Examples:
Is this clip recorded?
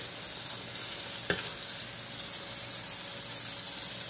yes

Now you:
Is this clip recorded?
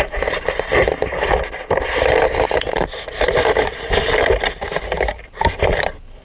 yes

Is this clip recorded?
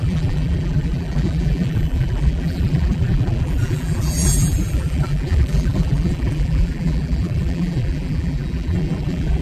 no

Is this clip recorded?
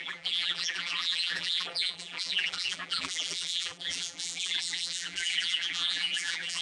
no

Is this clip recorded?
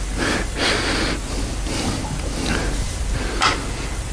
yes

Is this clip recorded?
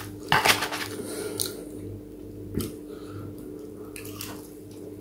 yes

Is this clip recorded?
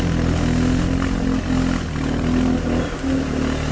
yes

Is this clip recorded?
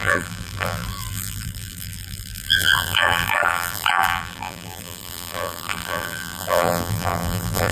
no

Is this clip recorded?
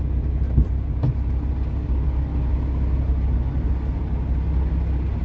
yes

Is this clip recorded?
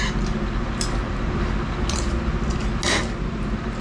yes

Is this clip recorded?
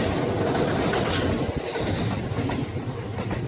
yes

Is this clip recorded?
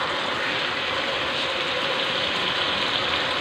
yes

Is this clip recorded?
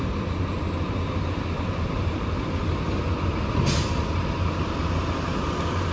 yes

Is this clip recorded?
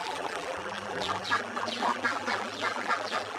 no